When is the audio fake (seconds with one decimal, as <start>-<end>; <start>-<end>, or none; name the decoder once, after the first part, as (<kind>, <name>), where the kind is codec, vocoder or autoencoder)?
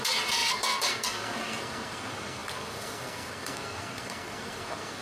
0.0-5.0 (codec, SNAC)